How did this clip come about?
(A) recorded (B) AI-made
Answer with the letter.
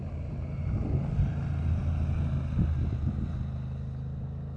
A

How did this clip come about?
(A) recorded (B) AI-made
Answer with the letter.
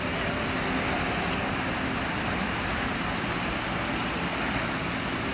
A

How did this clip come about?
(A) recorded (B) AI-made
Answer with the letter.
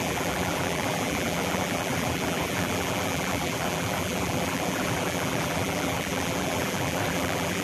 B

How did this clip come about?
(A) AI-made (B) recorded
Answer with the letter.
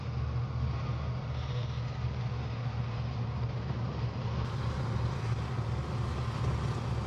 B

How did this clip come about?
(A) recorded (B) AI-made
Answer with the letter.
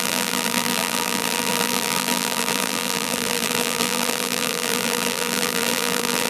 B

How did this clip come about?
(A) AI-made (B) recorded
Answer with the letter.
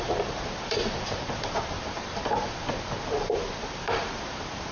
A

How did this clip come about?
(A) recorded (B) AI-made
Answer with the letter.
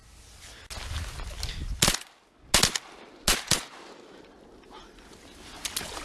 A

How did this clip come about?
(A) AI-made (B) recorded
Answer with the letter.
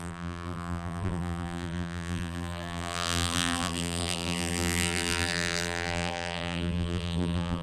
A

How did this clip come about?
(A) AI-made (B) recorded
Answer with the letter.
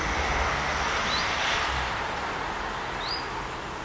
B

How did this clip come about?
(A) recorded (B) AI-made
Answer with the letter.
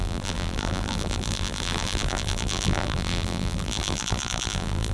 B